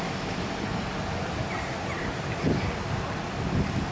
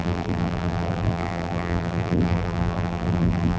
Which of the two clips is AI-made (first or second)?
second